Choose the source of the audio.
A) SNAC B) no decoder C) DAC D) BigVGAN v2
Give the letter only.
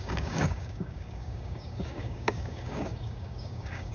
C